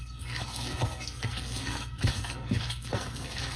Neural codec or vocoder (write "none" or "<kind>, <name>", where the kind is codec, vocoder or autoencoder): codec, SNAC